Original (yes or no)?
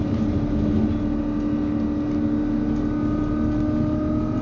yes